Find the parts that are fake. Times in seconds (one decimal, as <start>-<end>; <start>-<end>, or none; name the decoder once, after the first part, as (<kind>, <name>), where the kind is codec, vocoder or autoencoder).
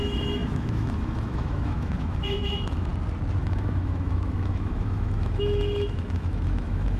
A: 0.0-2.9 (autoencoder, DAC-VAE); 3.4-7.0